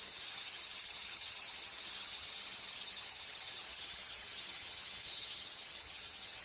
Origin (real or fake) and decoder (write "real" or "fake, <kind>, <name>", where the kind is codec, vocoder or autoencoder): fake, vocoder, HiFi-GAN